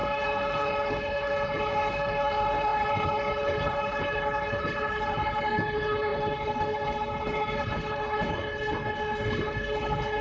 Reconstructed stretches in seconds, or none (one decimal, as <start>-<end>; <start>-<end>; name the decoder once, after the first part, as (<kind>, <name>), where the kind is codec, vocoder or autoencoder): 0.0-10.2 (codec, HILCodec)

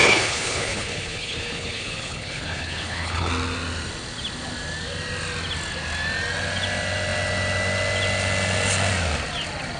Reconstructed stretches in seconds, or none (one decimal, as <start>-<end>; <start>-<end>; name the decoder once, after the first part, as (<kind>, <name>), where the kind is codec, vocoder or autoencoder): 0.0-3.3 (codec, HILCodec)

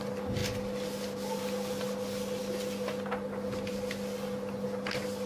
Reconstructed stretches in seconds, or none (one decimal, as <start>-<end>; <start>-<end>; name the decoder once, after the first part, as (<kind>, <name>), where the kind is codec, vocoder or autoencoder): none

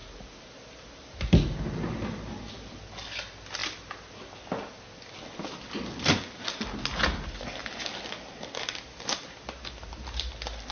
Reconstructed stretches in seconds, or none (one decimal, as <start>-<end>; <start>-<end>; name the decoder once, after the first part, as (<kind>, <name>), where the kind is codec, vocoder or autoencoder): none

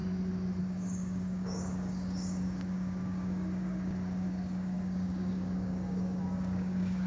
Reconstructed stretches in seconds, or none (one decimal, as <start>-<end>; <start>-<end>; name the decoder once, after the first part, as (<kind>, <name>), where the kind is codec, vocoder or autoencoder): 0.6-7.1 (codec, DAC)

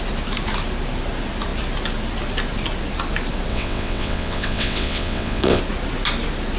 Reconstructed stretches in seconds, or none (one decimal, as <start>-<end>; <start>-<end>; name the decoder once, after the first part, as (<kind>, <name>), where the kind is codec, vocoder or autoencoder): 3.5-5.6 (vocoder, WaveNeXt)